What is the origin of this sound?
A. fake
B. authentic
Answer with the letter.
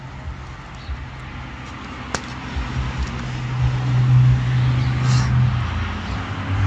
B